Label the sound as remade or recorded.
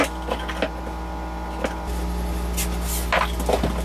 recorded